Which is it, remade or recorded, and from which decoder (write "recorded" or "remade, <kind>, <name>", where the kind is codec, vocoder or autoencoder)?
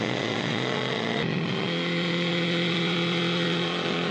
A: remade, vocoder, Vocos